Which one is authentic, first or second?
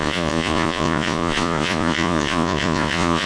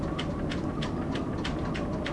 second